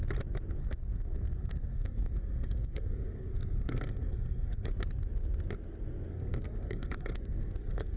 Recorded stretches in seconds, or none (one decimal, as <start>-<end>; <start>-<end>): 0.0-0.6; 4.7-6.1